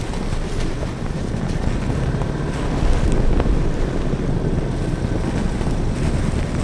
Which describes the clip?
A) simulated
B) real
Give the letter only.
B